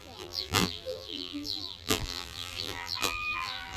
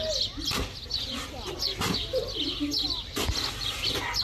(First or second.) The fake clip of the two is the first